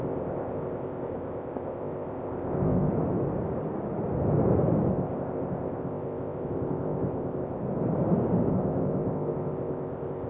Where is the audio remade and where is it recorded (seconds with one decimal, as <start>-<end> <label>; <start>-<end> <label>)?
0.0-2.9 remade; 2.9-4.9 recorded; 4.9-7.6 remade; 7.6-8.5 recorded; 8.5-10.3 remade